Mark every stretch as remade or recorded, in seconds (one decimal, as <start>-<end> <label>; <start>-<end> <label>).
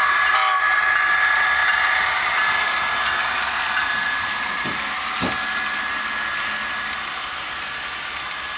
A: 0.0-8.6 recorded